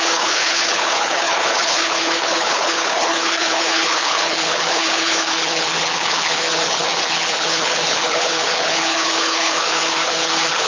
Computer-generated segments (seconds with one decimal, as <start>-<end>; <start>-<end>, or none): 0.0-10.7